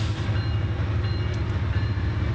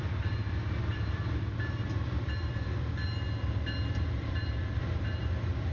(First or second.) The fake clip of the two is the second